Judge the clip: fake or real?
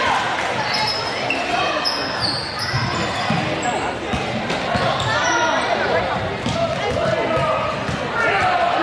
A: real